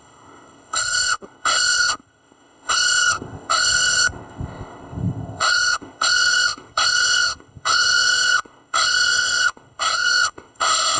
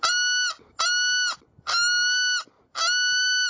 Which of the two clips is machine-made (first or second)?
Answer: first